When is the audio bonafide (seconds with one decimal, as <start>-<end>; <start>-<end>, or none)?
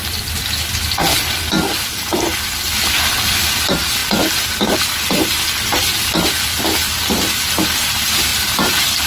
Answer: 0.0-8.3